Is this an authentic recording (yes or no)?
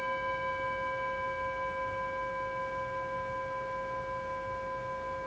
yes